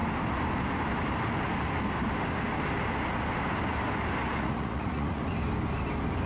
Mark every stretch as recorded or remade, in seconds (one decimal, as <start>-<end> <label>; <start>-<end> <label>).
0.0-4.2 recorded; 4.2-5.2 remade; 5.2-6.3 recorded